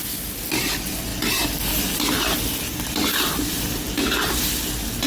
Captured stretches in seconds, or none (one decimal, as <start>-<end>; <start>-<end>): 0.0-5.1